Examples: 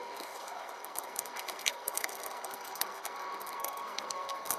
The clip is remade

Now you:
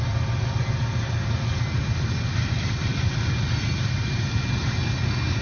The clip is recorded